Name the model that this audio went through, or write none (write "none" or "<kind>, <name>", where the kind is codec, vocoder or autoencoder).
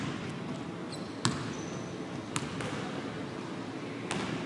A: none